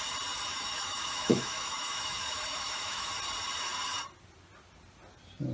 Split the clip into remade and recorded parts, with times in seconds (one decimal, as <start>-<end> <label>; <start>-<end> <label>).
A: 0.0-0.5 recorded; 0.5-3.1 remade; 3.1-5.5 recorded